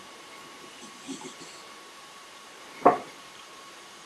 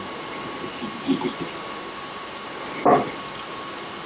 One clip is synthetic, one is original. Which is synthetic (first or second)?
first